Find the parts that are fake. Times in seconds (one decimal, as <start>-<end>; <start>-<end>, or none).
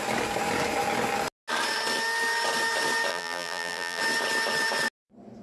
3.1-4.0